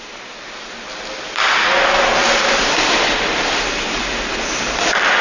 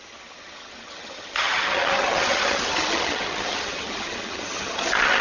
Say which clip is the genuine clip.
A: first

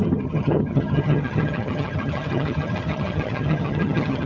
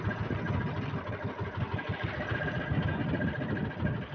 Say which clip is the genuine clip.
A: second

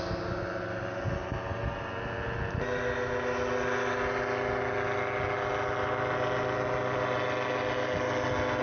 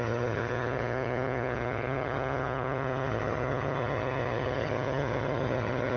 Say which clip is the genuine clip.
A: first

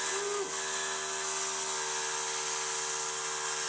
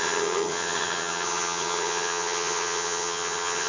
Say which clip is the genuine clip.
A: first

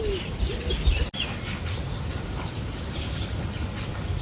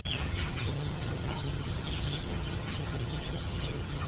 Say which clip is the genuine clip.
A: first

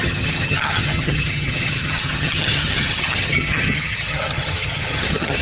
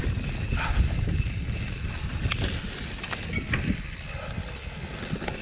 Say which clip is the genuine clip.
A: second